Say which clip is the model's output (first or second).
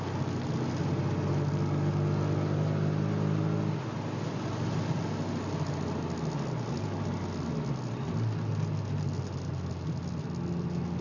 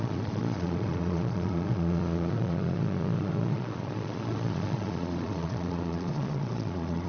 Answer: second